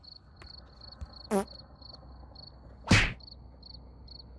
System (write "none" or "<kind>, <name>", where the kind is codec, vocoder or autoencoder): none